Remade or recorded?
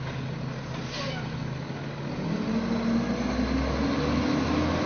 recorded